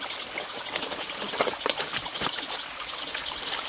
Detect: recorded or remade recorded